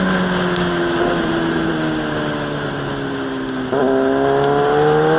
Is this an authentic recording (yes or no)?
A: yes